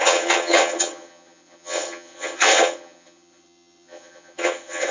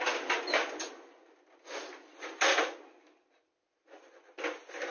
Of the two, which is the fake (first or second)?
first